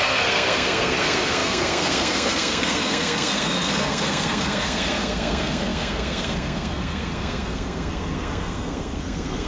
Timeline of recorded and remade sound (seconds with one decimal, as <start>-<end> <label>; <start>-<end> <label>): 0.0-9.5 remade